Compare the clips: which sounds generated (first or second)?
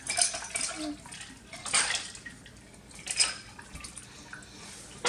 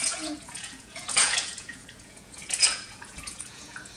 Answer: second